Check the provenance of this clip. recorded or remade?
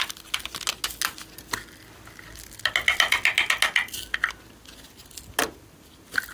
recorded